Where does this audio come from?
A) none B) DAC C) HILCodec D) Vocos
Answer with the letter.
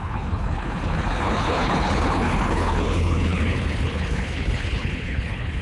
C